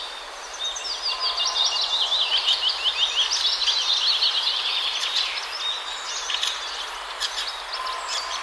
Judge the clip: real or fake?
real